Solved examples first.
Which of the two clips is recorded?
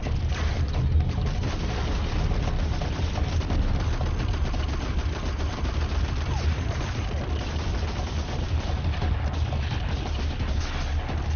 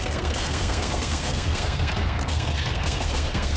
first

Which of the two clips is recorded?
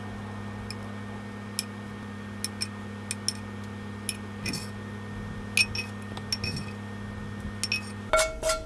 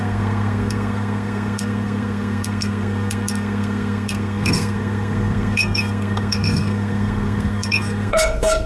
first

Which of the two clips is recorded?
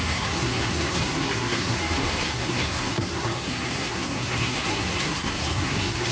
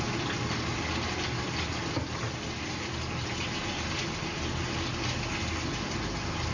second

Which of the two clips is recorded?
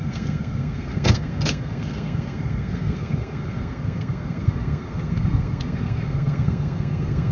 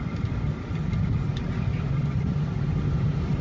second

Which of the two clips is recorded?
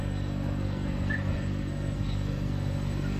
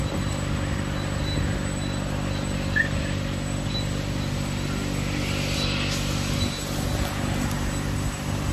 second